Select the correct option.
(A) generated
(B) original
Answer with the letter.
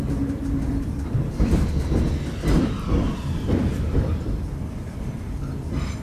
A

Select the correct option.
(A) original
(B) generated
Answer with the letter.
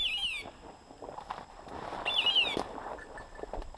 A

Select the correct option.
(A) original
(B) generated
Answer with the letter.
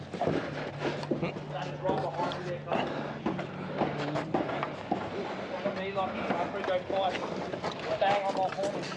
A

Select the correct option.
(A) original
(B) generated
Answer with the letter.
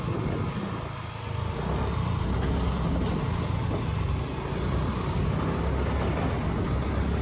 A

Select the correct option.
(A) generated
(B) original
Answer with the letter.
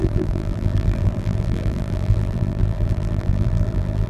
A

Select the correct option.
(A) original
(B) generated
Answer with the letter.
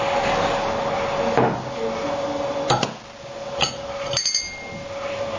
A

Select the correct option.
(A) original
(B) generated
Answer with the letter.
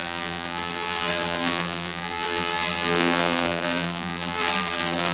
B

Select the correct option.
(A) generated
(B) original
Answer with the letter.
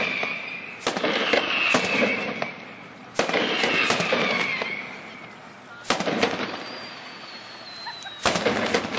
B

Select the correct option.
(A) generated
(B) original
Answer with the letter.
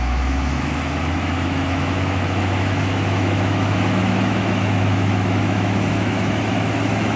A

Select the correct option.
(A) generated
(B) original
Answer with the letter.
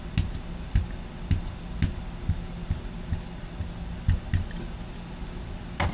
B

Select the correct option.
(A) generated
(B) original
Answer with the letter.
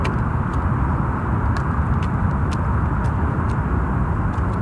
B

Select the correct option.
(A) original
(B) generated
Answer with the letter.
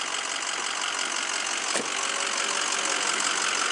A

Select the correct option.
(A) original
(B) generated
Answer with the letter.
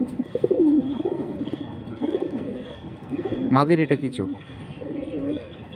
B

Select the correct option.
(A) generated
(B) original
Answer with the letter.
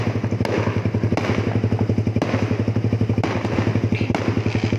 B